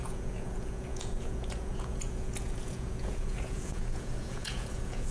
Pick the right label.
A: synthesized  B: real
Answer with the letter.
A